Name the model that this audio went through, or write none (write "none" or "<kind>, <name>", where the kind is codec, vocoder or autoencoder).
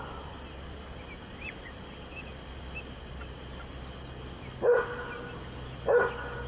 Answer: none